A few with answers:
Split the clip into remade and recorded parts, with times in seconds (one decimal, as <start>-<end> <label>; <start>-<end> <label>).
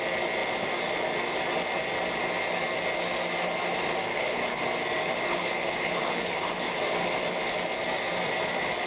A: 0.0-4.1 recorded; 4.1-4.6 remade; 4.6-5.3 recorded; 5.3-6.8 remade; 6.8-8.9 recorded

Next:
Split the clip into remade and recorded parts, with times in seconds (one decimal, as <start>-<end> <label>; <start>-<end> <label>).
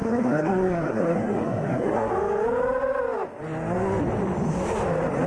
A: 0.0-2.1 remade; 2.1-5.3 recorded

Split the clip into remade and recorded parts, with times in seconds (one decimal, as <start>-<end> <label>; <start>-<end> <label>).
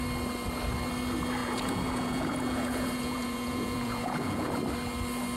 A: 0.0-1.4 recorded; 1.4-4.5 remade; 4.5-5.4 recorded